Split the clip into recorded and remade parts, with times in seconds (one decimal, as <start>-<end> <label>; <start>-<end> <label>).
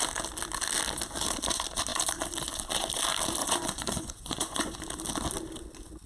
0.0-3.4 recorded; 3.4-4.8 remade; 4.8-6.1 recorded